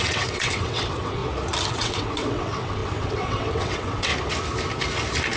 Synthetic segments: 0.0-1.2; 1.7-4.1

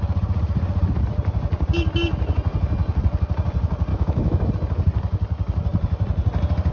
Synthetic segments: 3.9-4.5